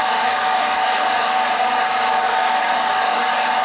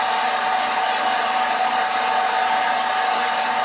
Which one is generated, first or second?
first